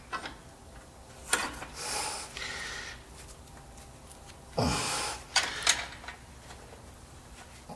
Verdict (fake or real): real